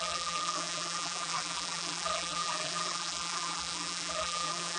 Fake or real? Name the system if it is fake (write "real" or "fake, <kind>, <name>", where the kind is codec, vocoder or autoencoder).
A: fake, vocoder, BigVGAN v2